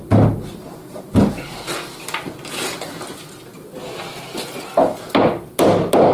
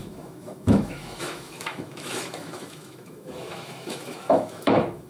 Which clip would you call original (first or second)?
first